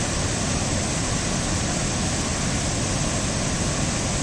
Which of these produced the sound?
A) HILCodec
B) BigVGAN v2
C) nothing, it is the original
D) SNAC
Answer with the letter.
C